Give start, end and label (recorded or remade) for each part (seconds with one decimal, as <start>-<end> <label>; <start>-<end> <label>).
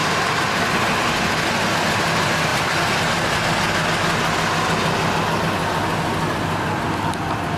0.0-0.6 remade; 0.6-7.6 recorded